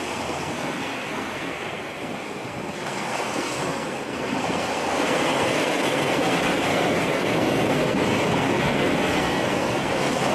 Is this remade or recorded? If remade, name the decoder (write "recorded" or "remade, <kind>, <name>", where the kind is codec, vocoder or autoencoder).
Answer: remade, codec, SNAC